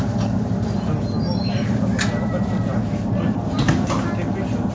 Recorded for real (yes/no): yes